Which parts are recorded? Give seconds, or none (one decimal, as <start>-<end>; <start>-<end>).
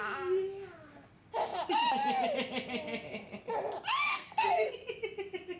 0.0-4.1; 4.7-5.6